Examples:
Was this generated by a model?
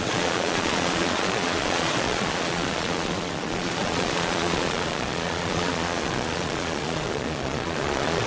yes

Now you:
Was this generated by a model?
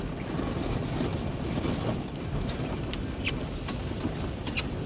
yes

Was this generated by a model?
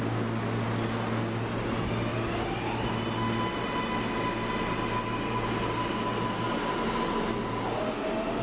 no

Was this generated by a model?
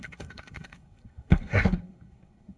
yes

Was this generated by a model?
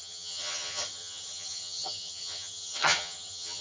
yes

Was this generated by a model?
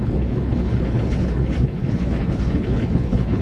yes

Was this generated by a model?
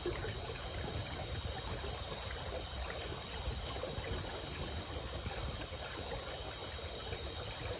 no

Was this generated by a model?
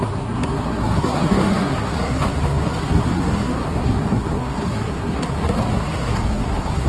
yes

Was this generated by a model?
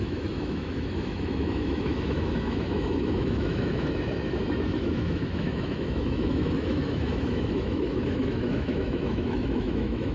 yes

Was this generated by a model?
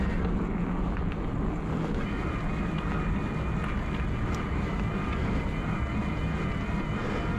no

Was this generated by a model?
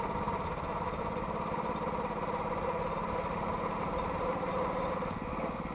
no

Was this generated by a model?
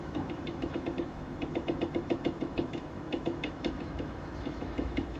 yes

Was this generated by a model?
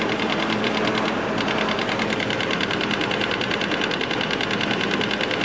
no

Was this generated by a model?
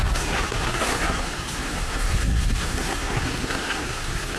yes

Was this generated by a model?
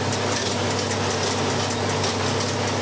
no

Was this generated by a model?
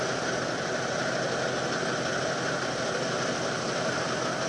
no